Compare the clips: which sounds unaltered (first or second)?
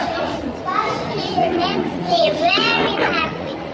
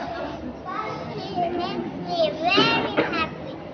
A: second